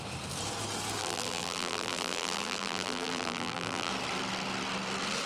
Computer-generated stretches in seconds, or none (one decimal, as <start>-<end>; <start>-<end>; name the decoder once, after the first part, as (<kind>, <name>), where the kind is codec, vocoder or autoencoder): 1.0-3.9 (vocoder, BigVGAN v2)